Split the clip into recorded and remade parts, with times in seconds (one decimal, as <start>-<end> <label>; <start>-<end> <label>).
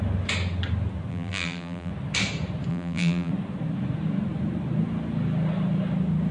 0.0-1.1 recorded; 1.1-1.9 remade; 1.9-2.7 recorded; 2.7-3.3 remade; 3.3-6.3 recorded